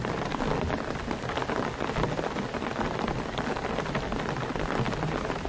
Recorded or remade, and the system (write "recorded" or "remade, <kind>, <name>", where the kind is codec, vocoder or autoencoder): recorded